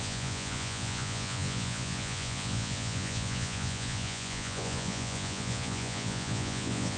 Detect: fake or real fake